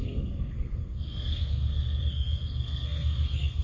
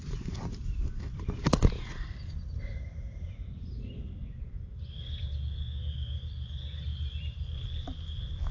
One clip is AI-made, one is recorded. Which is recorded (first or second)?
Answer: second